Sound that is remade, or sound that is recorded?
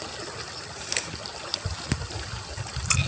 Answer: recorded